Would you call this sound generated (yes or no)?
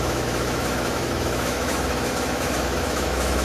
yes